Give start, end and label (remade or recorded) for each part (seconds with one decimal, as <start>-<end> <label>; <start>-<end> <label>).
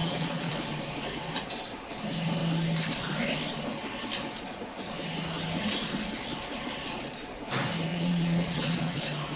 0.0-0.5 remade; 0.5-7.9 recorded; 7.9-9.0 remade; 9.0-9.4 recorded